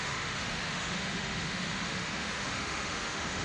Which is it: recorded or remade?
remade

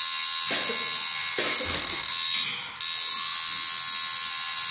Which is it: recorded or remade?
recorded